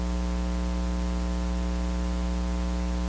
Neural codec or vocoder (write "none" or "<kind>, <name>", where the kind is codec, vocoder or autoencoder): none